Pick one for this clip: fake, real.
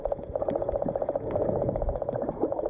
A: fake